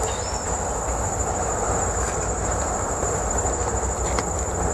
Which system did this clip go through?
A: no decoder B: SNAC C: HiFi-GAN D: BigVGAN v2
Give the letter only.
D